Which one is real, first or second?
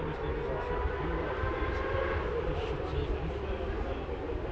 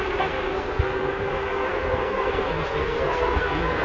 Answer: first